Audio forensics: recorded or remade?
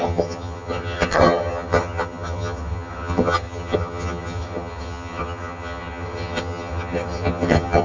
remade